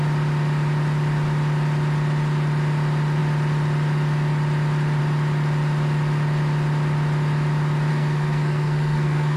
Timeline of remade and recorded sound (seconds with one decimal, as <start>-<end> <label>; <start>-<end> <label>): 0.0-7.9 recorded; 7.9-9.4 remade